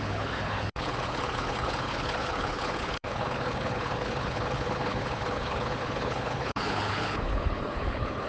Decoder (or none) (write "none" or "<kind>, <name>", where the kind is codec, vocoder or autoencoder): codec, HILCodec